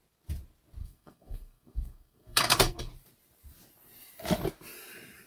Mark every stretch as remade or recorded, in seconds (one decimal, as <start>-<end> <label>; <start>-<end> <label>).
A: 0.0-0.8 recorded; 0.8-2.9 remade; 2.9-5.3 recorded